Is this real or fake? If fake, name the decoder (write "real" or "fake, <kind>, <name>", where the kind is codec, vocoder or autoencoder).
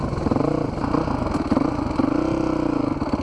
real